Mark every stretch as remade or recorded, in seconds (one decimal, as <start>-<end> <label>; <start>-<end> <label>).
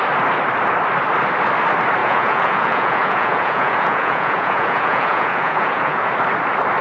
0.0-2.0 recorded; 2.0-6.1 remade; 6.1-6.8 recorded